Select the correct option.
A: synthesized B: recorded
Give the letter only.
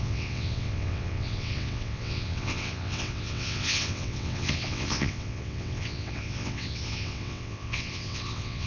A